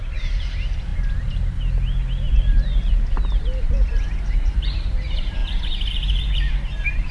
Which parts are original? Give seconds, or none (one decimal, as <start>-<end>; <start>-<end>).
0.9-3.9; 5.4-5.9